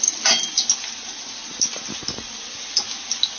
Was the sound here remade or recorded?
recorded